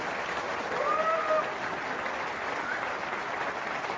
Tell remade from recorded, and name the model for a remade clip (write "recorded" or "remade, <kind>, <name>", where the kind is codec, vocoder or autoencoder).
recorded